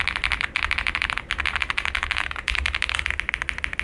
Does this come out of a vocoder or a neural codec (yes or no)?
no